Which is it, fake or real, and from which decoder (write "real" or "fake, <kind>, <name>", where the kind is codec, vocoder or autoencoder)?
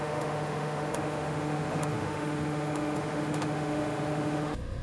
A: fake, autoencoder, DAC-VAE